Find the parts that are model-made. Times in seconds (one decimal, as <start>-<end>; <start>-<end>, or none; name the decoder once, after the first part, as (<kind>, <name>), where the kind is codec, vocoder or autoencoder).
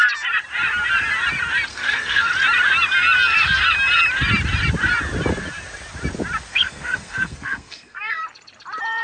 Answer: 1.7-2.3 (codec, SNAC); 6.5-8.2